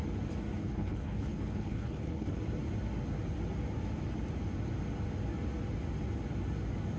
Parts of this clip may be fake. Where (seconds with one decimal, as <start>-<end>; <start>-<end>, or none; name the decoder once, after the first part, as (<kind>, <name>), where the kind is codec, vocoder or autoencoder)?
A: 0.6-2.4 (codec, HILCodec)